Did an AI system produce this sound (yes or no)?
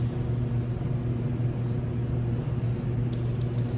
no